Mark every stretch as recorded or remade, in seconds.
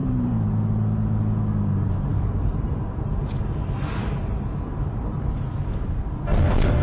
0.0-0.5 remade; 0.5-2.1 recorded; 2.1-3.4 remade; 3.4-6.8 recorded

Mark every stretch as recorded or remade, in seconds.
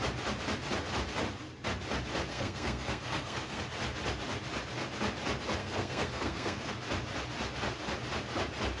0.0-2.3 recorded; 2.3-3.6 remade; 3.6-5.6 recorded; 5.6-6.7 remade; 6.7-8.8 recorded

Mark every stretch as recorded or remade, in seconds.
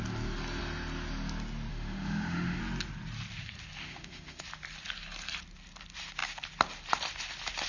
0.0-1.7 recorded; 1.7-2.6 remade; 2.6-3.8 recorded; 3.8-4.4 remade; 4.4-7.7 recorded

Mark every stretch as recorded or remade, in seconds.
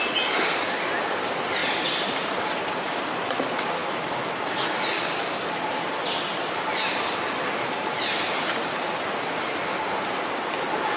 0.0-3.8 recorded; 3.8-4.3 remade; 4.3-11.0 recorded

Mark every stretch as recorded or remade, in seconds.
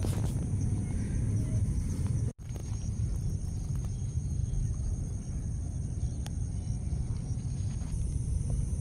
0.0-4.4 remade; 4.4-7.2 recorded; 7.2-8.8 remade